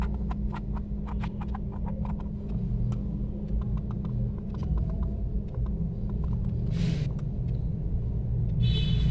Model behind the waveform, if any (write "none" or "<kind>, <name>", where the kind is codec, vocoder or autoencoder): none